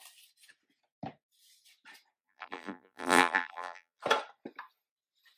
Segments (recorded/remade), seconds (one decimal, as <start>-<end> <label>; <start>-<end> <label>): 0.0-2.2 recorded; 2.2-4.0 remade; 4.0-5.4 recorded